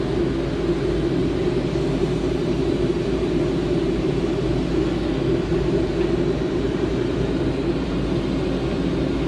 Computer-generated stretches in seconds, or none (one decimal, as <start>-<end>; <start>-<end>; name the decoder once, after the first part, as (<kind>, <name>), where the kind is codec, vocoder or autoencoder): 1.2-4.2 (vocoder, BigVGAN v2); 5.5-7.9